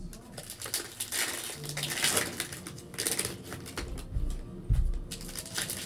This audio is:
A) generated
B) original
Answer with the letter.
B